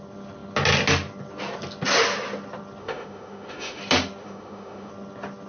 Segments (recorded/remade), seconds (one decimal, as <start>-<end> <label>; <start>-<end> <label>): 0.0-2.8 recorded; 2.8-3.8 remade; 3.8-4.2 recorded; 4.2-4.9 remade; 4.9-5.5 recorded